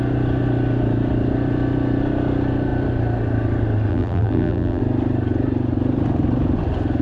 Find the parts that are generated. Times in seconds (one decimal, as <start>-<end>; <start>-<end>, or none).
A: 3.9-4.8